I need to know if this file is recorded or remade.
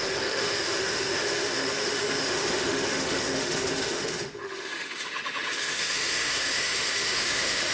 remade